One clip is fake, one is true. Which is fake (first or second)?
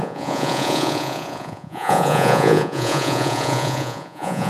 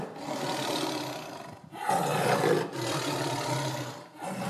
first